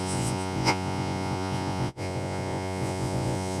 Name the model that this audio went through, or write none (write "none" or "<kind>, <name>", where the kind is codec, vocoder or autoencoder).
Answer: vocoder, Vocos